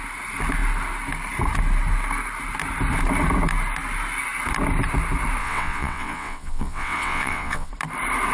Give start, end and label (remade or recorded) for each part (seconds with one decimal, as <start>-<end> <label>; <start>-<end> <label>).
0.0-5.4 recorded; 5.4-7.7 remade; 7.7-8.3 recorded